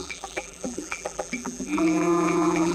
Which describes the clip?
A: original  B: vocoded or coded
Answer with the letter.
B